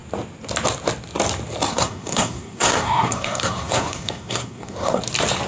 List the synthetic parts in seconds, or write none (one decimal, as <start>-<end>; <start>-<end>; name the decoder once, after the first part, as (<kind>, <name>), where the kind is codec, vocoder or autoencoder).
1.7-5.0 (codec, SNAC)

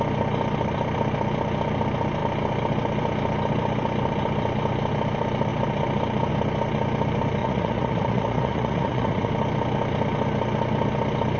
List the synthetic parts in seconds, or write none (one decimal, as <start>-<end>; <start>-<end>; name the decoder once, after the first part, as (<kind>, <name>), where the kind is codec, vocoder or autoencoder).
7.4-9.3 (vocoder, Vocos)